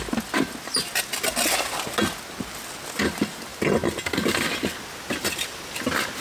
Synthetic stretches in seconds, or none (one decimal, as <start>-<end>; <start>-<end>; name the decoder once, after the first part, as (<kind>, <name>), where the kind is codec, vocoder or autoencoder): none